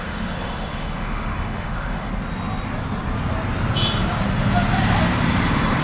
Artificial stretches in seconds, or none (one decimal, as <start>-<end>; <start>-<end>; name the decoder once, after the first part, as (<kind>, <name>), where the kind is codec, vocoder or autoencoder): 0.0-2.1 (autoencoder, DAC-VAE)